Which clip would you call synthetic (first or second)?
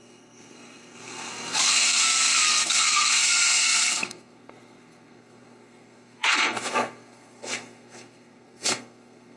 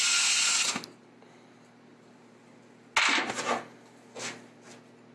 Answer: first